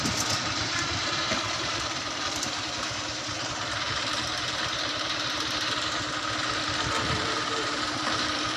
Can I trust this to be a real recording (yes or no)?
no